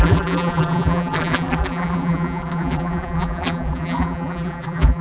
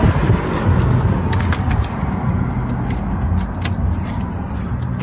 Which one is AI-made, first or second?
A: first